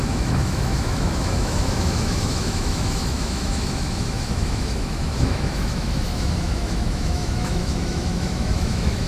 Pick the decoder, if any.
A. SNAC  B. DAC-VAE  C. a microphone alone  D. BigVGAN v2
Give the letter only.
B